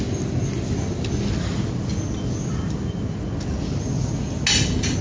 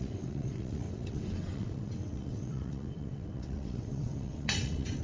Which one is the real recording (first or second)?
first